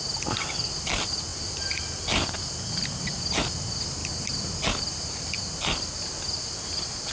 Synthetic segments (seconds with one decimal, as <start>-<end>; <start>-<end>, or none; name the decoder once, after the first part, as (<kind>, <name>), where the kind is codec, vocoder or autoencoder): none